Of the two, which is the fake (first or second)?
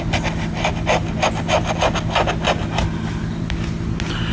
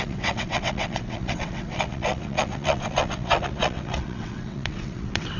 second